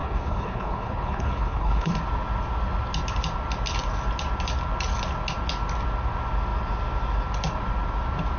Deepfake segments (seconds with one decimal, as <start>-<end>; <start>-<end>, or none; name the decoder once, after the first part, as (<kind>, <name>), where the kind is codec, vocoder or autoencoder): 0.0-1.9 (codec, HILCodec)